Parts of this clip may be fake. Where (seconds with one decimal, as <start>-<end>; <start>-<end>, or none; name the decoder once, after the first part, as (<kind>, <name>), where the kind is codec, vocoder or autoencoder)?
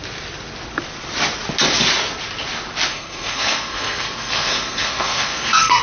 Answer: 2.9-5.8 (codec, SNAC)